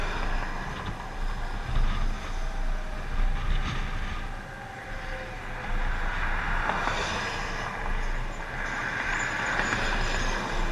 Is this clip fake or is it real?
real